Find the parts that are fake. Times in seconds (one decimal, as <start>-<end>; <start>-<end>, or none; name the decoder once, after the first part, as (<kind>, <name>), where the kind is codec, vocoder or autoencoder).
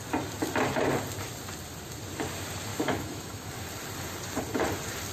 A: 2.7-3.5 (autoencoder, DAC-VAE)